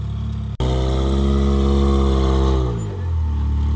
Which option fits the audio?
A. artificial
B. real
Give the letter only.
B